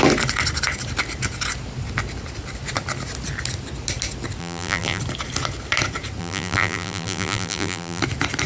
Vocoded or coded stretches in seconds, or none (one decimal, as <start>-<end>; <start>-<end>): 4.4-5.0; 6.2-8.0